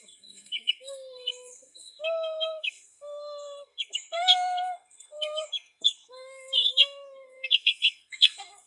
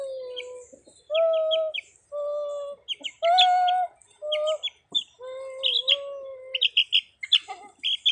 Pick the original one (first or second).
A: second